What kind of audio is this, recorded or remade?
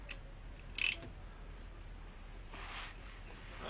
recorded